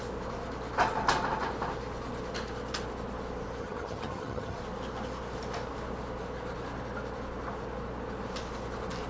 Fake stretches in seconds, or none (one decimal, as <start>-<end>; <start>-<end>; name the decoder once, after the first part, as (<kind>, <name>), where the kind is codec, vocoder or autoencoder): 3.6-4.6 (vocoder, HiFi-GAN)